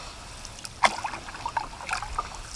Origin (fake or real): real